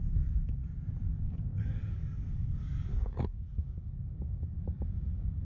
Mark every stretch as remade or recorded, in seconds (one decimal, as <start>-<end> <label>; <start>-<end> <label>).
0.0-0.6 remade; 0.6-1.1 recorded; 1.1-5.4 remade